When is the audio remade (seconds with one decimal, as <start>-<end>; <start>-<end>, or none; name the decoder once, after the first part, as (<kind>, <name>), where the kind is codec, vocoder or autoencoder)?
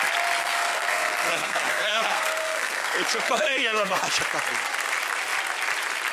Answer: 0.4-4.1 (codec, SNAC)